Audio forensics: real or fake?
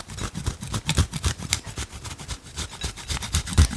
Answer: real